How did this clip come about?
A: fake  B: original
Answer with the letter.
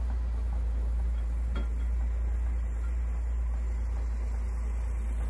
B